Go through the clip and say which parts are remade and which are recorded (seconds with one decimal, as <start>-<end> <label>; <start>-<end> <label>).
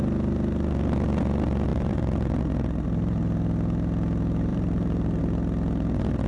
0.0-1.7 recorded; 1.7-2.4 remade; 2.4-4.5 recorded; 4.5-5.2 remade; 5.2-6.3 recorded